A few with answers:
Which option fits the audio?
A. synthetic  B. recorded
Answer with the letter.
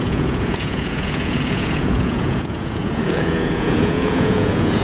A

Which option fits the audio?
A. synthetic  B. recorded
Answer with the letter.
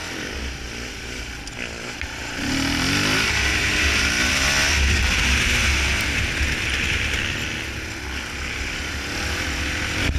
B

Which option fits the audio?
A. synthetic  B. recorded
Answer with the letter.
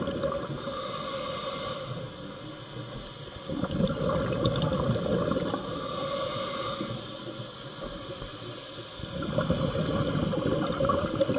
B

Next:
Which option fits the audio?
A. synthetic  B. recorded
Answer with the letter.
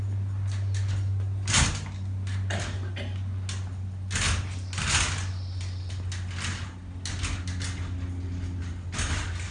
B